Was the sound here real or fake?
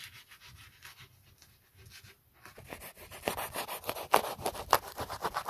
real